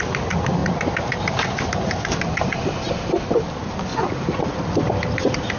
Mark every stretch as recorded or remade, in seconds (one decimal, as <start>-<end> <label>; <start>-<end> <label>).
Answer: 0.0-3.9 recorded; 3.9-4.6 remade; 4.6-5.6 recorded